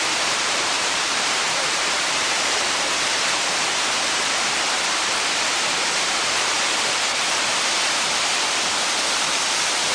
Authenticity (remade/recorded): remade